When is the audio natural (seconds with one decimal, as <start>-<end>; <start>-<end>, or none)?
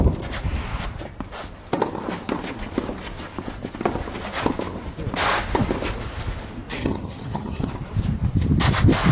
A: 0.0-6.8; 7.7-9.1